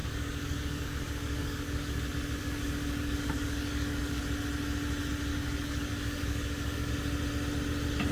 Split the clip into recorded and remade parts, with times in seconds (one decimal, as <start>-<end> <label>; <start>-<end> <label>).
0.0-2.0 remade; 2.0-2.4 recorded; 2.4-4.2 remade; 4.2-5.3 recorded; 5.3-6.9 remade; 6.9-8.1 recorded